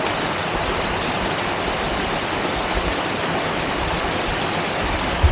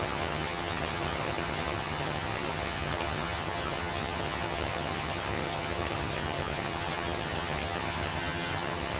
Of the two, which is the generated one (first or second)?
second